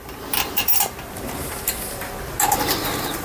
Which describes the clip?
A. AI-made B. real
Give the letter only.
B